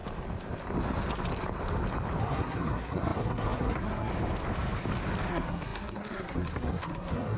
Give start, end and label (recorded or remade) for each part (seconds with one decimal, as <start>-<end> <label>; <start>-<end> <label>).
0.0-2.2 recorded; 2.2-4.1 remade; 4.1-5.3 recorded; 5.3-7.4 remade